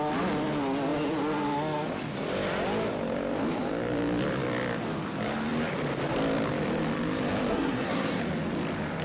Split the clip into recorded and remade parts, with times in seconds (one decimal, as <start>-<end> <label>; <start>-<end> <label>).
0.0-7.5 recorded; 7.5-8.2 remade; 8.2-9.0 recorded